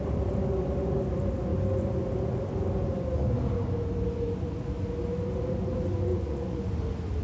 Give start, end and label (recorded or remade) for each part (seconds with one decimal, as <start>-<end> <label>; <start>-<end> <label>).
0.0-6.1 recorded; 6.1-6.6 remade; 6.6-7.2 recorded